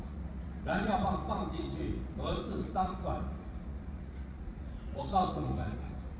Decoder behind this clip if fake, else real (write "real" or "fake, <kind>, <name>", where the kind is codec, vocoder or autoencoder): fake, vocoder, Vocos